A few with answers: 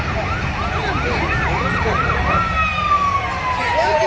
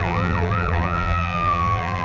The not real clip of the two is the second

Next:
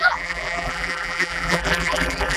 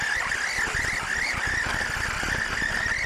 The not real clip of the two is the first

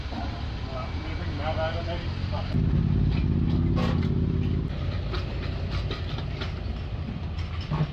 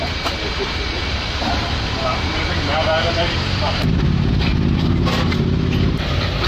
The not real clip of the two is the second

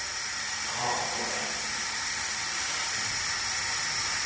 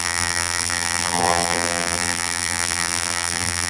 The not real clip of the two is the second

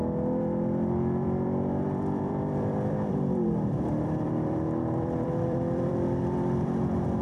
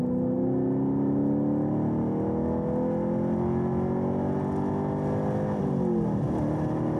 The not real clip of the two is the first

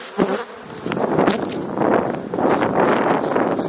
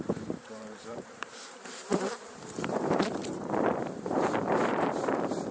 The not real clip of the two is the second